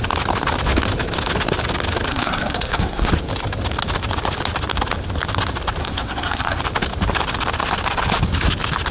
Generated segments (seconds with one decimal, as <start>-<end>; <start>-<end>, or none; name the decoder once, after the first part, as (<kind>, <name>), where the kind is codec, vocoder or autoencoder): 2.1-3.1 (codec, SNAC); 5.8-6.6